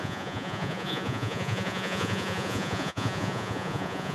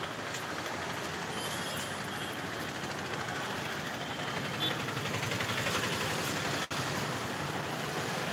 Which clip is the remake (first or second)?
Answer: first